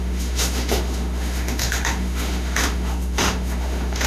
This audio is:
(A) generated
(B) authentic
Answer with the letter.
A